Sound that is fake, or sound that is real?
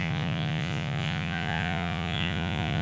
fake